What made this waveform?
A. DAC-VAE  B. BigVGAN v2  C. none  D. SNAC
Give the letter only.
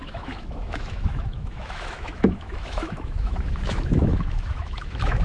A